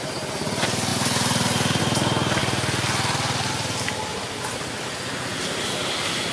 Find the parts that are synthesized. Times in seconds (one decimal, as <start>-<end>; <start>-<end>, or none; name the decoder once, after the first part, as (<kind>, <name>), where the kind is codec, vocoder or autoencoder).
none